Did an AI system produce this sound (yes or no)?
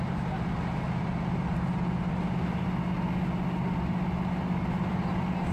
no